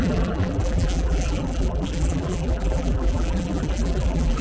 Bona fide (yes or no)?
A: no